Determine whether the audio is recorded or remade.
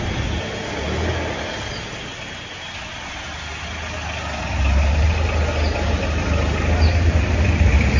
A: recorded